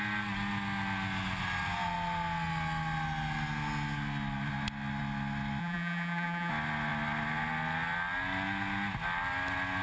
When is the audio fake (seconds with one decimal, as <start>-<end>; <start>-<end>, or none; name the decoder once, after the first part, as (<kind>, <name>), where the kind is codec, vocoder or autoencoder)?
5.6-6.5 (vocoder, BigVGAN v2)